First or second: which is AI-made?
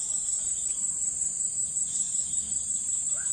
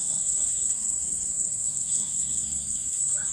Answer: second